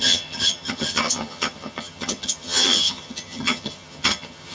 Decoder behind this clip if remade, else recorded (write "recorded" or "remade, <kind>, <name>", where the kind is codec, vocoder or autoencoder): remade, vocoder, HiFi-GAN